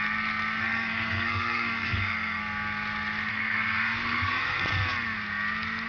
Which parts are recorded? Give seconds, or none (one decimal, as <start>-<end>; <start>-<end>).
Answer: 0.0-0.6; 2.4-3.3; 4.6-5.9